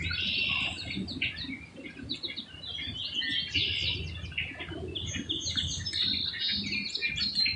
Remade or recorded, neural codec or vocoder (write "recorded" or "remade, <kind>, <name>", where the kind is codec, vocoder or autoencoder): recorded